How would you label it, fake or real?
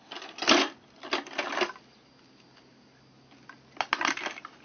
real